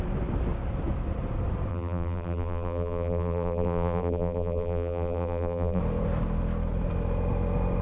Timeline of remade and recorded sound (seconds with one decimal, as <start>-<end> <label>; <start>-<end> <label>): 0.0-1.7 recorded; 1.7-5.8 remade; 5.8-7.8 recorded